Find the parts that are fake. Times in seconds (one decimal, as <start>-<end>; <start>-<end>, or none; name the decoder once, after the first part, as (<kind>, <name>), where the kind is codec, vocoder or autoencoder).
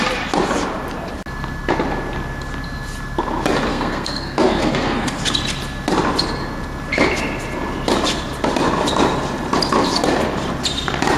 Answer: 3.7-5.2 (codec, SNAC)